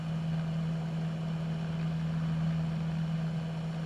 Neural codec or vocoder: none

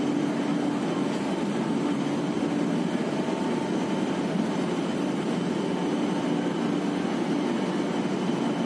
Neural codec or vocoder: none